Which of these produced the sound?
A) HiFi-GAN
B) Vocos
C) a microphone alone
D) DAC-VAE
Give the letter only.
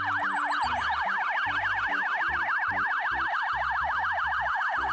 C